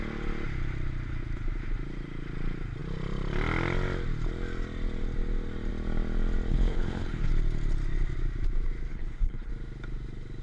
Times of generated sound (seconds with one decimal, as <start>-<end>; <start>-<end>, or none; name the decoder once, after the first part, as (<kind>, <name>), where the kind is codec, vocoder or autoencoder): 6.5-7.3 (codec, HILCodec); 8.9-9.5